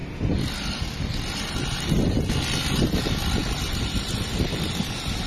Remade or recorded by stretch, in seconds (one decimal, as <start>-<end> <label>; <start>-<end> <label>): 0.0-5.3 recorded